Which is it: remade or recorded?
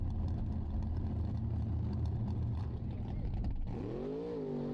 recorded